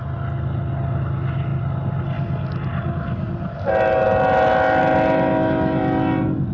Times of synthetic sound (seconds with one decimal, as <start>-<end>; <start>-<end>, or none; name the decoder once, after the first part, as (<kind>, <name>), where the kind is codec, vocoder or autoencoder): none